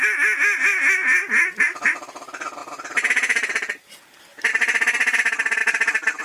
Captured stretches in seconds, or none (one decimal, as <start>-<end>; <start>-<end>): 0.0-6.2